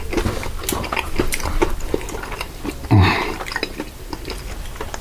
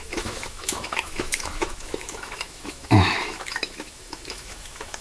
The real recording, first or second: first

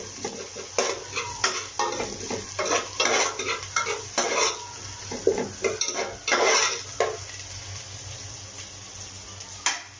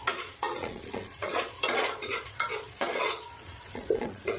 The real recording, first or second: first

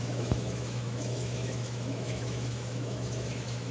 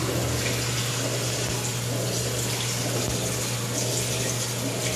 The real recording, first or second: second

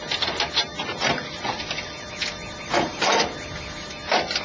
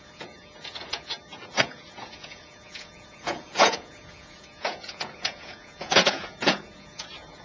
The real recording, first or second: first